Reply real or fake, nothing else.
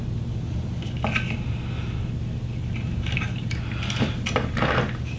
real